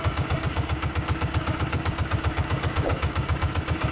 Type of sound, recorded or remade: remade